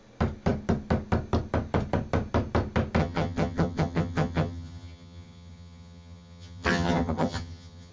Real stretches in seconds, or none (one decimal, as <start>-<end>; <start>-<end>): 0.0-3.0